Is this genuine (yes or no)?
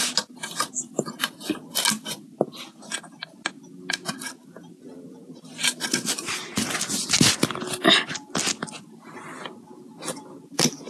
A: yes